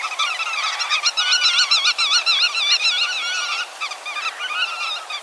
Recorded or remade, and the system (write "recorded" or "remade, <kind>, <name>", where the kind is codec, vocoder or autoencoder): recorded